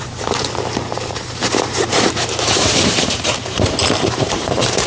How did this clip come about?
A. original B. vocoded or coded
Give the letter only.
B